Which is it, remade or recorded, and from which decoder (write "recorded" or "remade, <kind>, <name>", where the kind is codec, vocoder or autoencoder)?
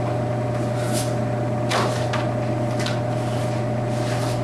recorded